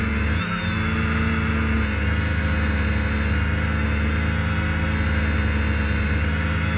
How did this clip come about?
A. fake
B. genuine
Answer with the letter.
B